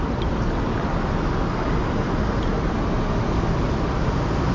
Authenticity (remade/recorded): recorded